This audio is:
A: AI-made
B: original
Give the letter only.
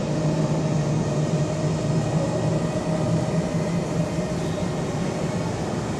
B